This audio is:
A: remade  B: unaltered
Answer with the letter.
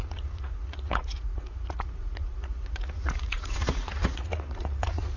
A